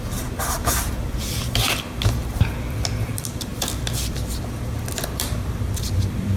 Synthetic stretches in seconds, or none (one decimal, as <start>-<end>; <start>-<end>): 0.0-6.4